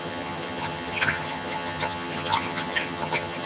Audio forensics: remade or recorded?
remade